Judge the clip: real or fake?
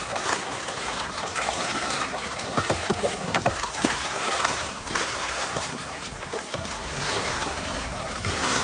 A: fake